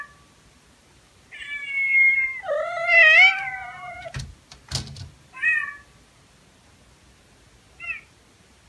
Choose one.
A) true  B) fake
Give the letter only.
A